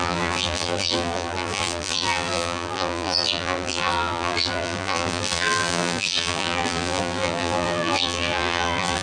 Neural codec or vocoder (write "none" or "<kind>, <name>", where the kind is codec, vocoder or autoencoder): vocoder, BigVGAN v2